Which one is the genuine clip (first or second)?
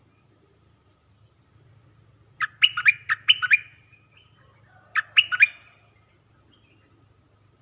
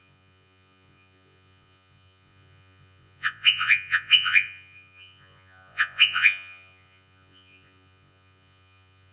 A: first